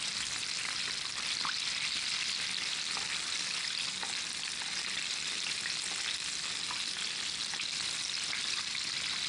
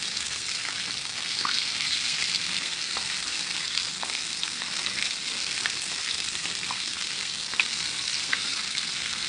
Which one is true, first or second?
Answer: first